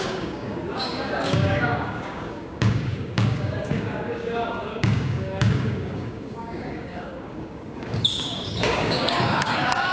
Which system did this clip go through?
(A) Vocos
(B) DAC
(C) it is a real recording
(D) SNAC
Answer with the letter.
B